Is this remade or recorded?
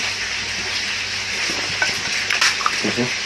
recorded